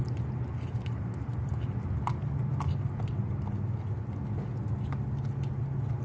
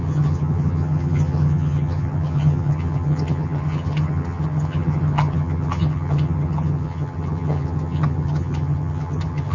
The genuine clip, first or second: first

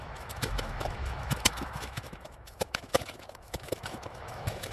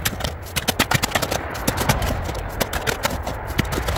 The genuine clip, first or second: second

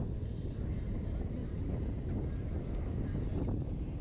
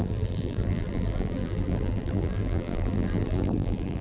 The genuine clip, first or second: first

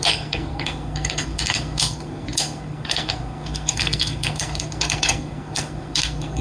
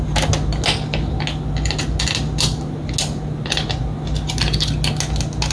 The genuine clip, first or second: second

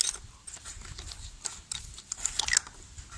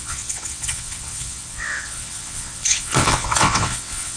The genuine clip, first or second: first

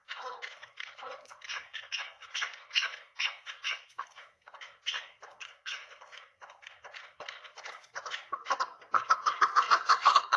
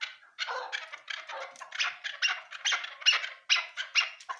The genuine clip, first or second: second